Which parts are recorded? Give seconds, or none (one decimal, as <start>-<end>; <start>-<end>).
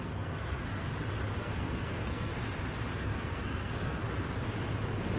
0.9-1.4; 2.3-2.9; 4.0-5.2